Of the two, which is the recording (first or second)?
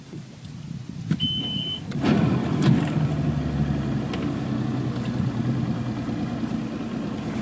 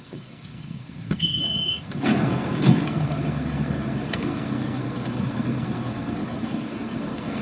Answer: first